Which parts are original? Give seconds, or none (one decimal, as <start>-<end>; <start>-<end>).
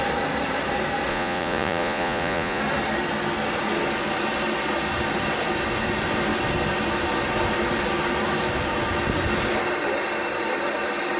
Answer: 0.0-1.1; 2.6-11.2